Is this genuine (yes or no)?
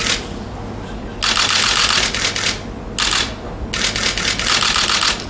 yes